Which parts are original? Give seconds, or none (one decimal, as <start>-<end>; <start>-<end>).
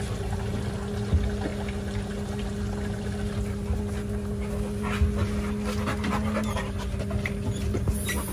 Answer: 0.0-8.3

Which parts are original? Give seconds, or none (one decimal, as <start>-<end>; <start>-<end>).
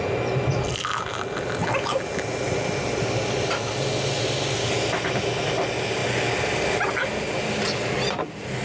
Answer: 0.0-8.6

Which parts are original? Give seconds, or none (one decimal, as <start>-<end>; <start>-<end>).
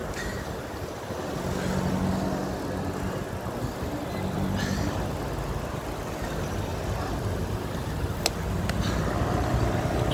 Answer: 0.0-6.7; 8.3-10.1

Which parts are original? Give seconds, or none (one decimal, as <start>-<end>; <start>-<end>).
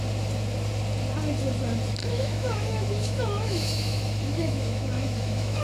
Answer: 0.0-2.0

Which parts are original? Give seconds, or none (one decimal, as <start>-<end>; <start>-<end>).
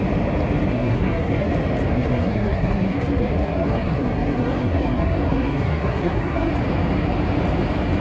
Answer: 0.0-0.7; 1.5-1.9; 6.5-8.0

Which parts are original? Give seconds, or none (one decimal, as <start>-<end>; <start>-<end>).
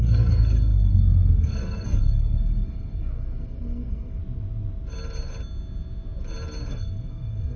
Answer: 4.2-6.7